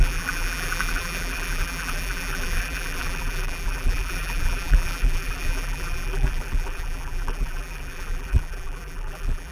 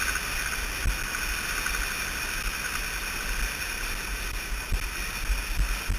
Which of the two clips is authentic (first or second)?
second